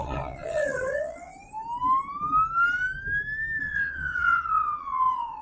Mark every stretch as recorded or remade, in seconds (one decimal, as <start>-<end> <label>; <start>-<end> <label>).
0.0-1.3 remade; 1.3-3.6 recorded; 3.6-5.4 remade